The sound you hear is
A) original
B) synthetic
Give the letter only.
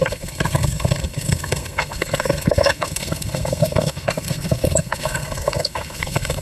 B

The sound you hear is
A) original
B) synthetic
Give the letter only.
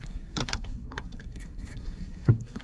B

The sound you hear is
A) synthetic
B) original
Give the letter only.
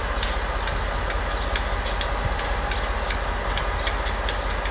B